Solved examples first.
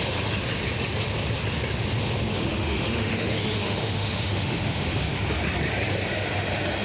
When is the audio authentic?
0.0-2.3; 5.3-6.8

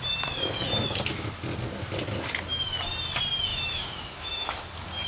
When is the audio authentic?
0.0-3.5; 4.5-5.1